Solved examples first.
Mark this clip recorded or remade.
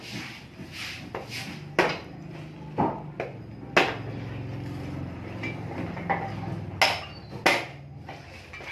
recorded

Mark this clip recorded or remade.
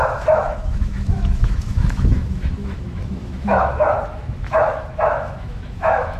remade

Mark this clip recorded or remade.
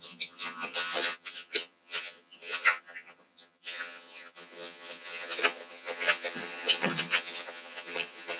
remade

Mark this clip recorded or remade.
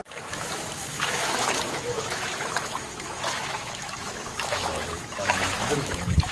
remade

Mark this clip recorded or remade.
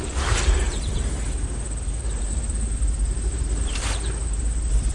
remade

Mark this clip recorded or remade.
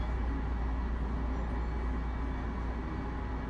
recorded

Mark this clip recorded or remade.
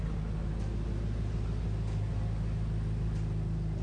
recorded